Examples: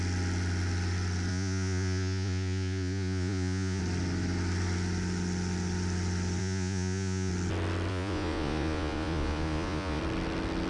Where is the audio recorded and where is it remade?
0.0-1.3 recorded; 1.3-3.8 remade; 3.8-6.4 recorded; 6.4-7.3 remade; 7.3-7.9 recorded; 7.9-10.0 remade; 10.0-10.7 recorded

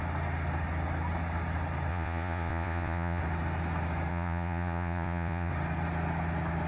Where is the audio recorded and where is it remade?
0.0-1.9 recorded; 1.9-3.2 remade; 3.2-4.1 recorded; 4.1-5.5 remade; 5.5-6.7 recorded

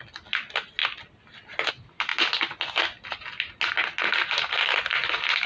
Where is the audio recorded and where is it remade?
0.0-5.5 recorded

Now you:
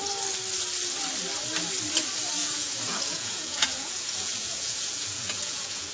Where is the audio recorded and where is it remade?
0.0-2.4 recorded; 2.4-5.9 remade